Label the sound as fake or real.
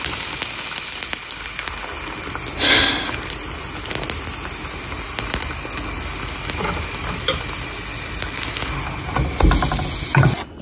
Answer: real